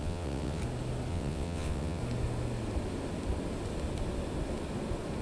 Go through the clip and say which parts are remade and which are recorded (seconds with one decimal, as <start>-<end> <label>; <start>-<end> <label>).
0.0-0.6 remade; 0.6-1.1 recorded; 1.1-2.0 remade; 2.0-5.2 recorded